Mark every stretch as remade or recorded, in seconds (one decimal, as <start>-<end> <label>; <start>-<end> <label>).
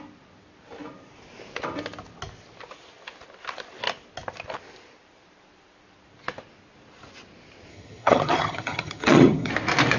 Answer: 0.0-7.7 recorded; 7.7-9.5 remade; 9.5-10.0 recorded